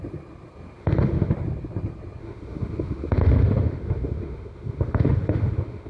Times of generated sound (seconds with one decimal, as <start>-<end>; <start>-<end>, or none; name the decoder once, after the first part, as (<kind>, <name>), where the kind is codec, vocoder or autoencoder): 0.8-1.3 (autoencoder, DAC-VAE); 2.2-5.9